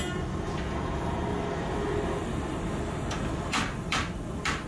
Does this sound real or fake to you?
real